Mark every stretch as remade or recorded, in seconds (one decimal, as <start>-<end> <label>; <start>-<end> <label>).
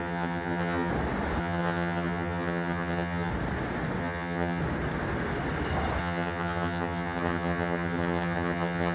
0.0-0.9 remade; 0.9-1.4 recorded; 1.4-3.3 remade; 3.3-4.0 recorded; 4.0-4.6 remade; 4.6-6.0 recorded; 6.0-8.9 remade